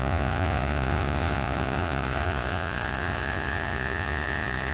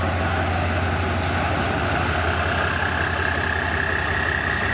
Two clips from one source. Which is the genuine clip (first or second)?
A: second